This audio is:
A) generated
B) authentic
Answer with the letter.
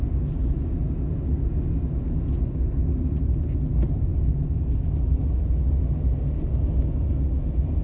B